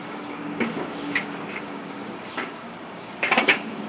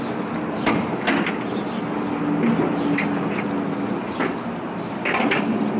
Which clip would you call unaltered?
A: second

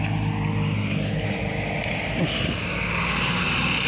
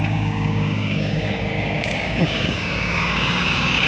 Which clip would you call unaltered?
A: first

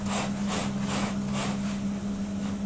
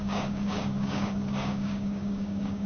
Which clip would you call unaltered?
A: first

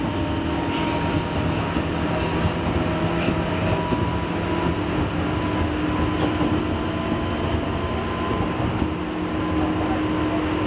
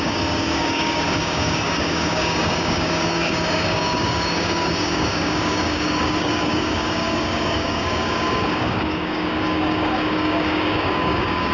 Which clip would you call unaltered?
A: first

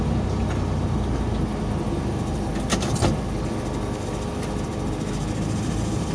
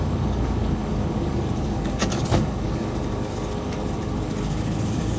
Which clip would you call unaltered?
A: first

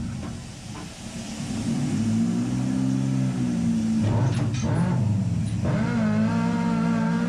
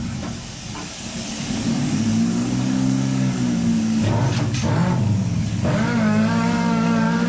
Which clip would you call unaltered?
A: first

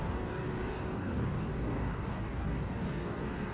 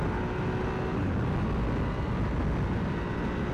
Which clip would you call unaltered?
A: second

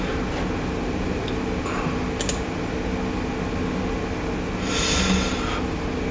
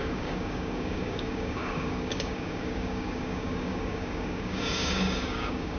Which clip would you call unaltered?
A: first